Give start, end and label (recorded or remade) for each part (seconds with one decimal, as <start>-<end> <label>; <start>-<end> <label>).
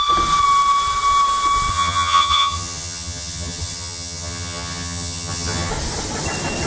0.0-1.7 recorded; 1.7-5.7 remade; 5.7-6.7 recorded